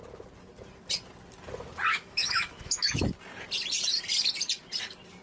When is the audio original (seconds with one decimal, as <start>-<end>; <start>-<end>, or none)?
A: 0.0-1.9; 3.1-5.2